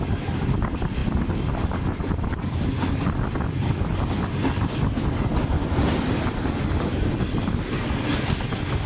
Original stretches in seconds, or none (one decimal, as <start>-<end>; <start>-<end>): 0.0-8.9